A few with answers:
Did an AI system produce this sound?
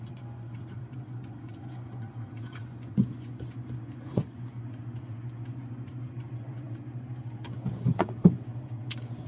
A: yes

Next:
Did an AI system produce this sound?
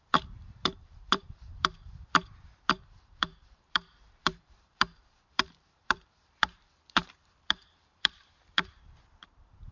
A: yes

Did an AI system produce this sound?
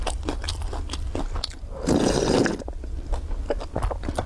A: no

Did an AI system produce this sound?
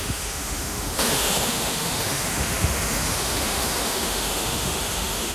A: yes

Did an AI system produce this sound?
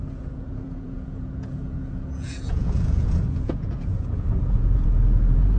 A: yes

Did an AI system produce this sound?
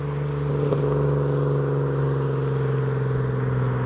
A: no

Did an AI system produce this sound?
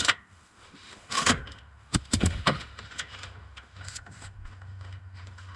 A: yes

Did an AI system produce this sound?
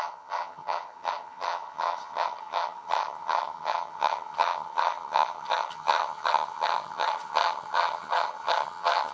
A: yes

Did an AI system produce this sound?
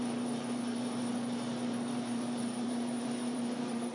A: yes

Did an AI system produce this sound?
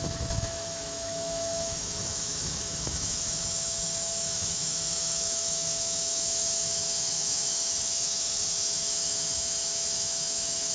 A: yes